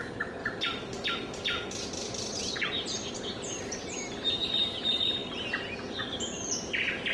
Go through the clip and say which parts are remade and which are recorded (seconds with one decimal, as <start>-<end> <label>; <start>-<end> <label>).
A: 0.0-7.1 recorded